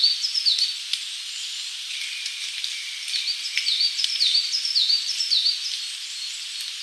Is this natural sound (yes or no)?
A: yes